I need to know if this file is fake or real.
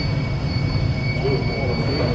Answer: fake